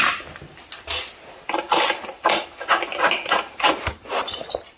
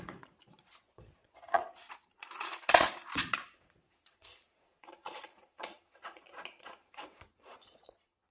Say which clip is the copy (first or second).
second